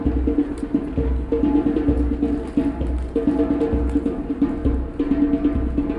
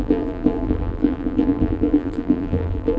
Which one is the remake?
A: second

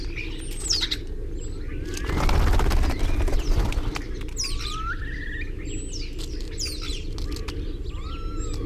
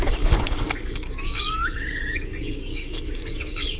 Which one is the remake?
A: second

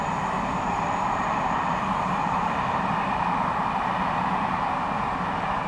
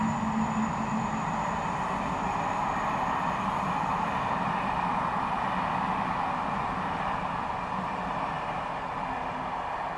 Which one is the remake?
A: first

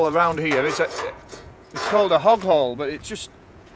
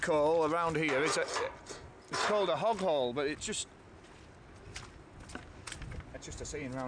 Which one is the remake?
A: first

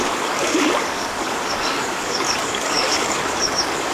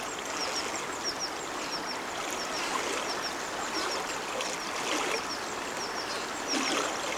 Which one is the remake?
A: first